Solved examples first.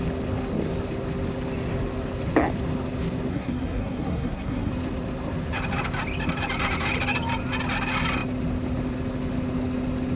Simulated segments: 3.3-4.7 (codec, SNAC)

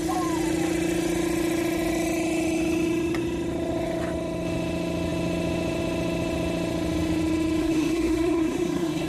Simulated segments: 7.6-9.1 (codec, SNAC)

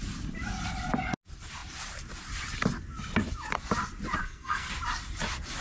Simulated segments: 4.2-4.7 (codec, SNAC)

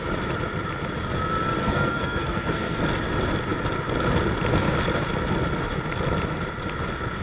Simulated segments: 1.6-2.8 (codec, SNAC)

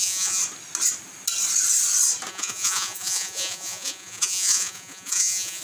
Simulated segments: 0.0-0.4 (vocoder, Vocos); 2.3-5.6